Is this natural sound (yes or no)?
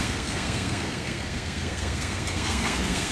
no